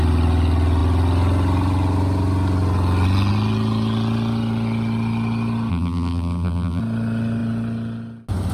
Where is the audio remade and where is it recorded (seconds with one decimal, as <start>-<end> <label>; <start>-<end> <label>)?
0.0-5.7 recorded; 5.7-6.8 remade; 6.8-8.5 recorded